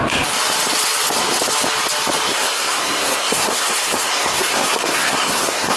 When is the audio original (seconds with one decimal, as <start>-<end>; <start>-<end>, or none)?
0.0-2.3